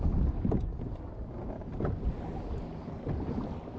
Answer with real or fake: real